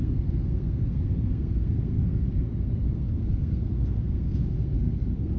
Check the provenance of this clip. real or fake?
fake